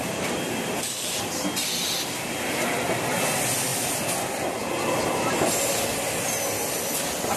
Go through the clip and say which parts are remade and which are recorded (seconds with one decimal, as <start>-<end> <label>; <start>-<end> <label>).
0.0-1.2 remade; 1.2-7.4 recorded